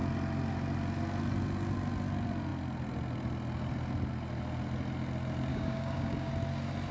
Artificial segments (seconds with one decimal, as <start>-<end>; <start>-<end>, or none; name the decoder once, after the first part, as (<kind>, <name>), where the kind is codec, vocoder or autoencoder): 5.5-6.3 (codec, DAC)